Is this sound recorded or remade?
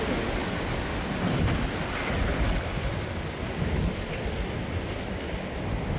recorded